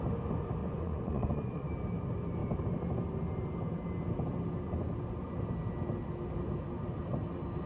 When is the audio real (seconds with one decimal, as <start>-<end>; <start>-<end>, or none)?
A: 0.0-0.6; 1.7-7.7